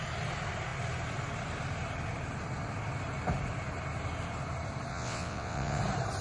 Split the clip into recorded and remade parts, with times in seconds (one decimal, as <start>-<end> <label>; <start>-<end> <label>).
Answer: 0.0-4.9 recorded; 4.9-5.8 remade; 5.8-6.2 recorded